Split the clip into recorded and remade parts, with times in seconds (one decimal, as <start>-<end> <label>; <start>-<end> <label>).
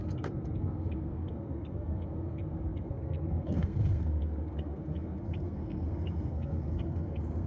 0.0-7.5 remade